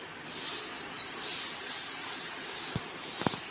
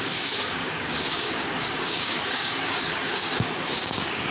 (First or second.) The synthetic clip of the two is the second